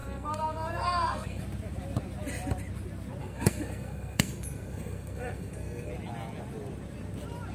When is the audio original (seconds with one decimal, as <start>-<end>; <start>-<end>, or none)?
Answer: 1.4-3.2; 5.9-7.5